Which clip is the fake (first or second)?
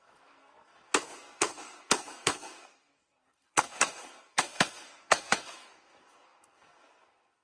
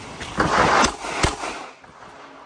first